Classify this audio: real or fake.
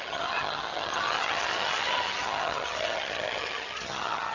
fake